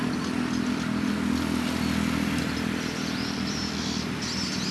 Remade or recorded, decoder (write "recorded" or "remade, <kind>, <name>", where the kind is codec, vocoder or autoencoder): recorded